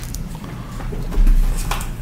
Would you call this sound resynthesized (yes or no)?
yes